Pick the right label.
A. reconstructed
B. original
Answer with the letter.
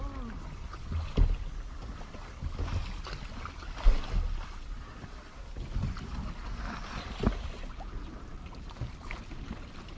B